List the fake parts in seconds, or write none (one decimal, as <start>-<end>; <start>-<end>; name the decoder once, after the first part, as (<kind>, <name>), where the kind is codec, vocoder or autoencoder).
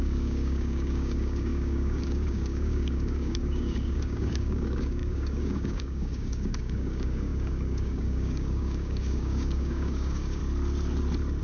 0.0-10.4 (codec, DAC)